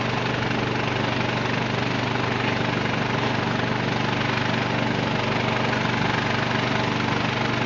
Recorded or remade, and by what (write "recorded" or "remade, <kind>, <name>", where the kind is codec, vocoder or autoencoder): recorded